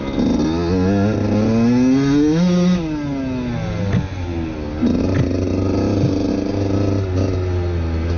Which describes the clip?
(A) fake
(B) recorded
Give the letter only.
B